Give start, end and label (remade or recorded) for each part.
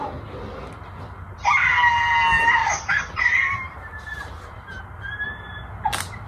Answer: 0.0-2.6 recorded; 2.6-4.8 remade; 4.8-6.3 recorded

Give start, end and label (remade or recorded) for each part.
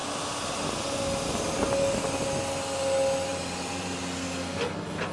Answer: 0.0-3.3 recorded; 3.3-4.0 remade; 4.0-5.1 recorded